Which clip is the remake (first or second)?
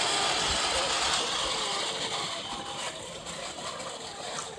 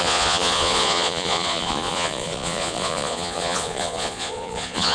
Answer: second